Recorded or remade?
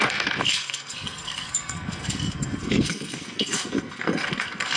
remade